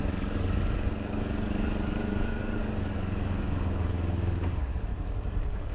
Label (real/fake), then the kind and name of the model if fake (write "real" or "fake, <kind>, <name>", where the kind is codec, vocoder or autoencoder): fake, codec, DAC